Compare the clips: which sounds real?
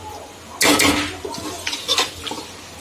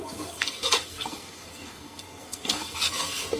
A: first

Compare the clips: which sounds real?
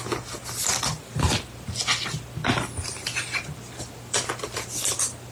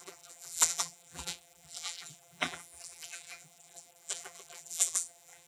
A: first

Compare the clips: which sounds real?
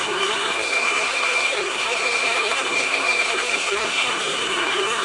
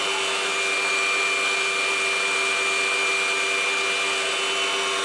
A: second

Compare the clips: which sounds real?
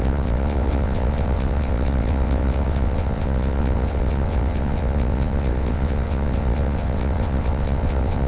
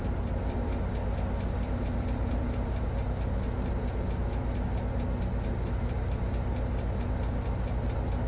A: second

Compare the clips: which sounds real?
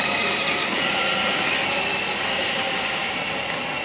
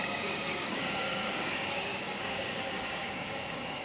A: first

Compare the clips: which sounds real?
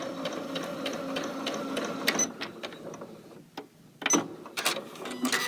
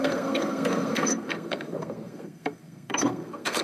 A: first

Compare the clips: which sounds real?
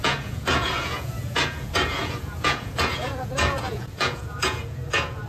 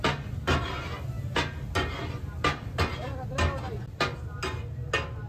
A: second